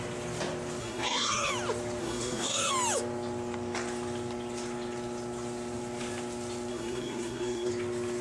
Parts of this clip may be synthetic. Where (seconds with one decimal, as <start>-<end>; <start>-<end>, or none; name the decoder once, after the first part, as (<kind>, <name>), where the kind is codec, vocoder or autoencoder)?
0.8-1.5 (codec, SNAC); 2.0-2.7; 6.7-7.7